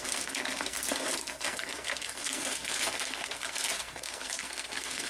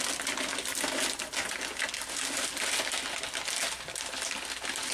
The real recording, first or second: second